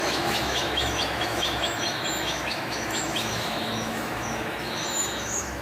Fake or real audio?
fake